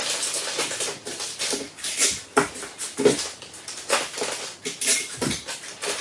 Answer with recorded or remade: recorded